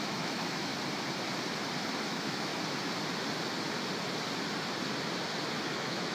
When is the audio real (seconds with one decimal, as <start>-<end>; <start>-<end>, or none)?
0.7-2.0; 2.5-5.6